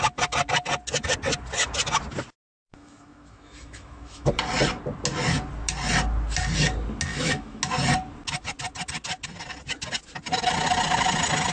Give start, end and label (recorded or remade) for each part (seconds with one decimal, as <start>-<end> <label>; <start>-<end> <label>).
0.0-2.6 recorded; 2.6-4.3 remade; 4.3-7.1 recorded; 7.1-7.6 remade; 7.6-11.5 recorded